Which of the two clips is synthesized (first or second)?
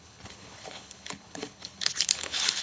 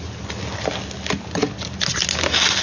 first